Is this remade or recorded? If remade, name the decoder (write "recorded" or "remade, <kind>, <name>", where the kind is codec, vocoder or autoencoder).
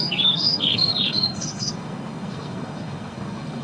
remade, codec, SNAC